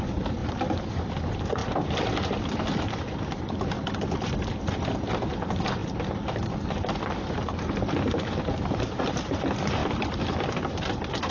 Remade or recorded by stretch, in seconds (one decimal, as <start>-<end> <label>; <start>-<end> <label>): 0.0-0.4 recorded; 0.4-1.1 remade; 1.1-1.6 recorded; 1.6-2.2 remade; 2.2-9.8 recorded; 9.8-10.9 remade; 10.9-11.3 recorded